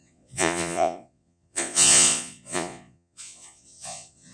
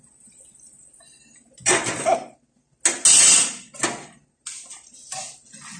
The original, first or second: second